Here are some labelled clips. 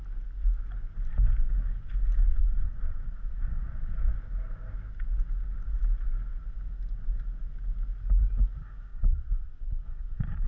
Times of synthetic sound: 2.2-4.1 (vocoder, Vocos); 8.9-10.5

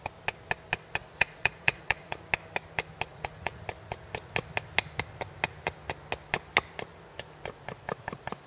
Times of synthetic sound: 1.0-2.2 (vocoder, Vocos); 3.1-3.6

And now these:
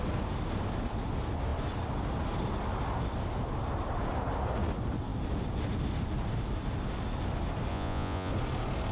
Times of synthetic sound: 7.7-8.3 (vocoder, Vocos)

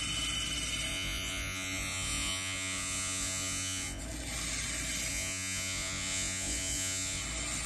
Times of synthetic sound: 0.9-4.0 (vocoder, Vocos); 5.1-7.2

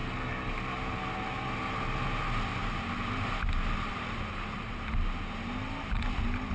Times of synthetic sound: none

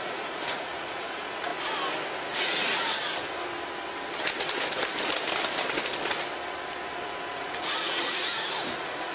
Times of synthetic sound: 0.0-1.5 (vocoder, Vocos); 2.4-3.0; 7.3-9.1

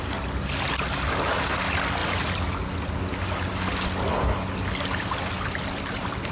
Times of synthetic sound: none

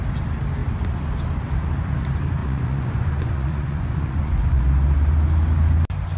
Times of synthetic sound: 2.4-4.6 (vocoder, Vocos)